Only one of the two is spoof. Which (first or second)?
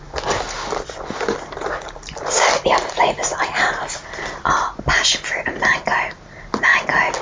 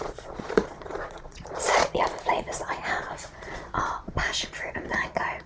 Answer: second